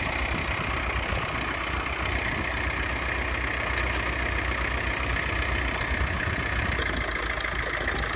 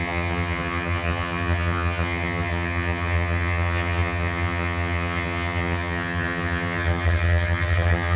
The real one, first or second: first